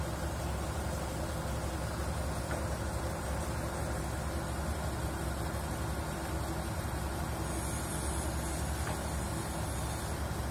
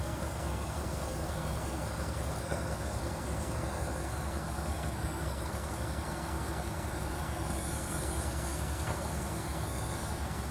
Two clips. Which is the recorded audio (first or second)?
first